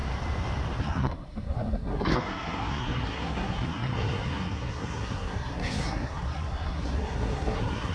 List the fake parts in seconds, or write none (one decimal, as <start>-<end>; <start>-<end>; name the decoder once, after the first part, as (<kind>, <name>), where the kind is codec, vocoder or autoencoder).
0.8-7.9 (codec, SNAC)